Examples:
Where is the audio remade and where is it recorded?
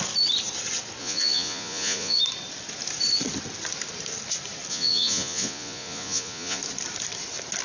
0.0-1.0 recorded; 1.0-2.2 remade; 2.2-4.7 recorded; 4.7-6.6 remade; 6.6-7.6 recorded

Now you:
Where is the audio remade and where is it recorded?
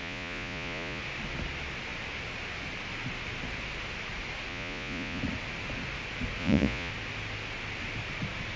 0.0-1.0 remade; 1.0-4.5 recorded; 4.5-5.2 remade; 5.2-6.4 recorded; 6.4-6.9 remade; 6.9-8.6 recorded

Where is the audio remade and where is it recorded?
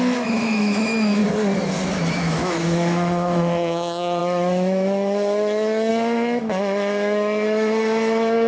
0.0-1.2 remade; 1.2-1.9 recorded; 1.9-8.5 remade